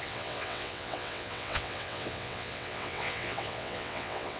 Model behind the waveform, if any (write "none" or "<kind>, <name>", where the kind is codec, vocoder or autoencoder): vocoder, WaveNeXt